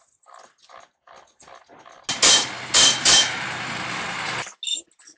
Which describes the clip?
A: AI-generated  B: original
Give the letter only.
B